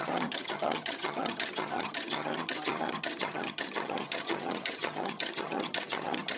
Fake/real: fake